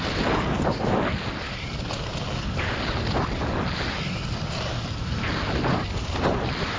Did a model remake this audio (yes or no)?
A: no